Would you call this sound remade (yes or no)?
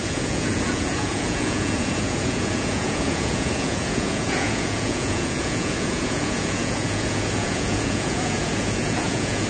yes